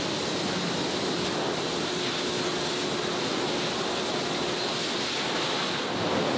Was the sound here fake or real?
real